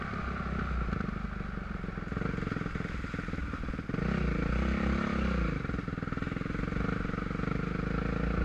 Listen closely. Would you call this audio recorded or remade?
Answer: recorded